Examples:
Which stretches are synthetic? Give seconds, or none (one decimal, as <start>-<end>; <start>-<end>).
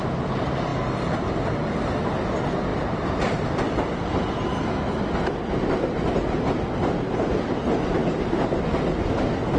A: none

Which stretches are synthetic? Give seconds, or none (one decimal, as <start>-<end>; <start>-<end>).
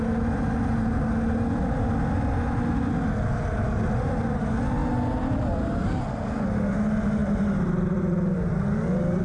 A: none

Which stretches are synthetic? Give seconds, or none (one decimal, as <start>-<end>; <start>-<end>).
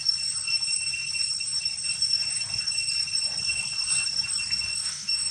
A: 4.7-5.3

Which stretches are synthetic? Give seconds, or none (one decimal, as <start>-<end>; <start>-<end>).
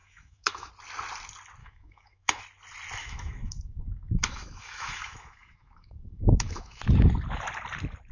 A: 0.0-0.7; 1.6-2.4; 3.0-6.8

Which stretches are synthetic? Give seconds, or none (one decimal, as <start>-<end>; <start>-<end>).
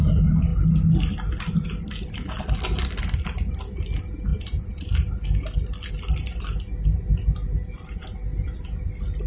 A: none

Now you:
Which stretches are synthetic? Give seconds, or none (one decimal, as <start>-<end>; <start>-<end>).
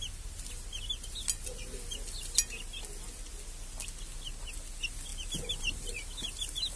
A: none